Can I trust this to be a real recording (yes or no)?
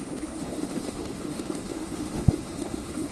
no